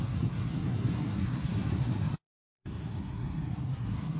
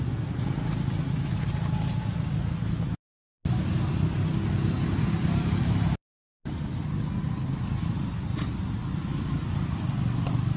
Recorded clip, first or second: second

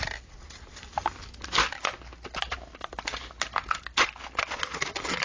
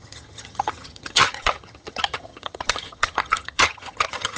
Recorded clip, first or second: first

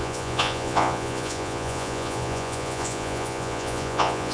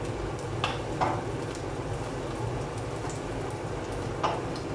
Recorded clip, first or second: second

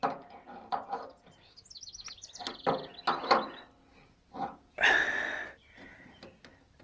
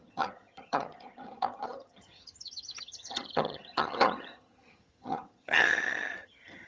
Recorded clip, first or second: first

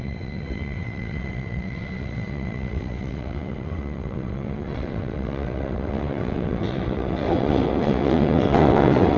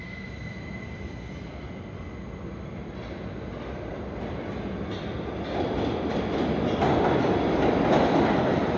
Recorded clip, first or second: second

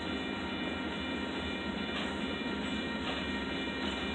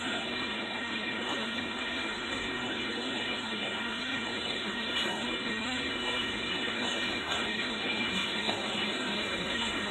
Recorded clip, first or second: first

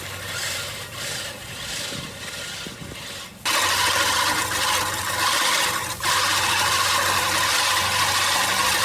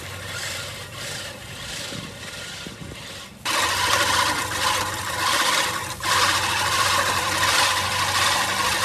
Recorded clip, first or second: first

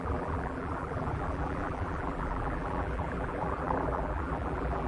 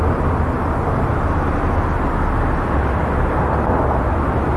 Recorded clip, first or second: second